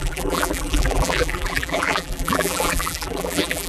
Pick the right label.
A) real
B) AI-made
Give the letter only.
B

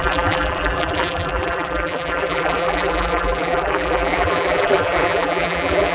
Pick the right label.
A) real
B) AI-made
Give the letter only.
B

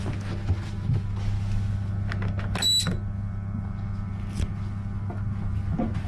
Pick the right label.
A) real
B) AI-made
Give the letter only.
A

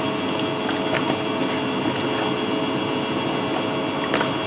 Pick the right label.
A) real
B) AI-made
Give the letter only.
A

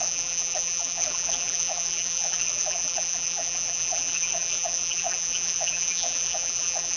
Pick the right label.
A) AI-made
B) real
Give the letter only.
A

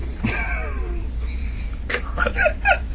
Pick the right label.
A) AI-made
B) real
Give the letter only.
A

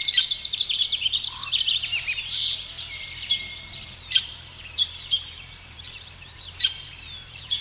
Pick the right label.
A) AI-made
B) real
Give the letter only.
A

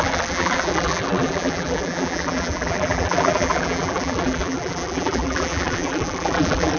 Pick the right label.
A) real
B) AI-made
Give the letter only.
B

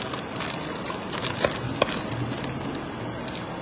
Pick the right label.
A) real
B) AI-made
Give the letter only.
A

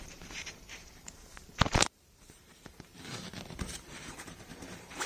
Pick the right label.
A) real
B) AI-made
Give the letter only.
B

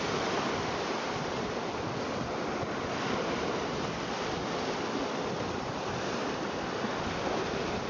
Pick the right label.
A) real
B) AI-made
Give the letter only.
B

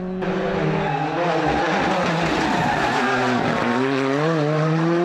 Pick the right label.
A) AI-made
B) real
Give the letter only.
B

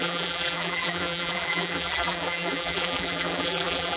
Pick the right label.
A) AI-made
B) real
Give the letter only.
A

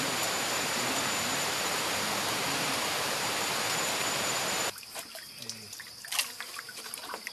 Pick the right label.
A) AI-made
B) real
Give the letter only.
A